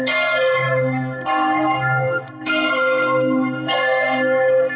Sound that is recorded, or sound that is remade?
remade